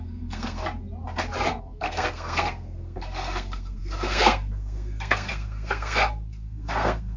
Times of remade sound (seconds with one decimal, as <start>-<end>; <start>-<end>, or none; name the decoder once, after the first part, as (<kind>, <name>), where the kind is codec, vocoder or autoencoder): 0.0-0.6 (codec, SNAC); 1.6-7.2